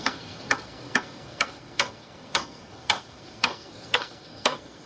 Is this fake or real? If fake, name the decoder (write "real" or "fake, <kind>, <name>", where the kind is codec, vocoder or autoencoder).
fake, codec, SNAC